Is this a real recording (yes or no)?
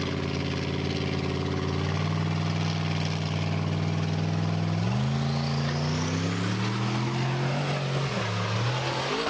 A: yes